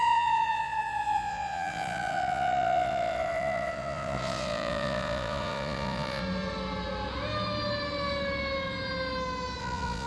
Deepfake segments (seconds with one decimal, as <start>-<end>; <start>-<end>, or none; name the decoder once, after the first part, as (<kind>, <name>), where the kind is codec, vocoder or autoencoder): 0.0-6.2 (vocoder, Vocos); 9.6-10.1